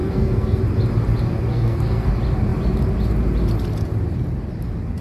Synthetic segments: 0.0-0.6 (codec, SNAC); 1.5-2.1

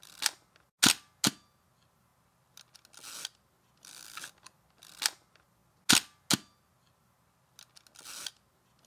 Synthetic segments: none

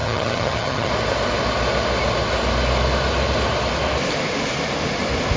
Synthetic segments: 0.0-0.9 (vocoder, HiFi-GAN)

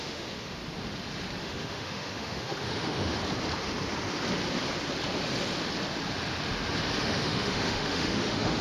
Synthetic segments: 0.0-0.6 (autoencoder, DAC-VAE); 1.4-3.2; 7.0-8.6

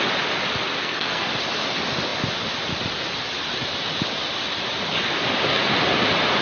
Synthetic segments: 0.8-1.3 (codec, SNAC)

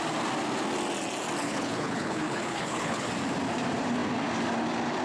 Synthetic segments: 1.4-3.1 (codec, HILCodec)

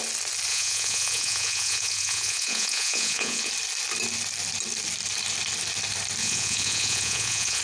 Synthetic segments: 0.5-3.5 (vocoder, Vocos); 6.2-7.6